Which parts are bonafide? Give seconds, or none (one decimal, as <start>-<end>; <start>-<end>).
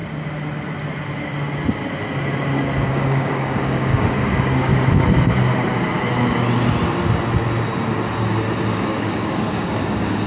0.0-2.9; 4.7-8.7